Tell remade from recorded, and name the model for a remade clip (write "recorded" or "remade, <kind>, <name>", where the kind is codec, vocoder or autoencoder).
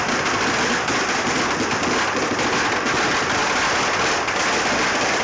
recorded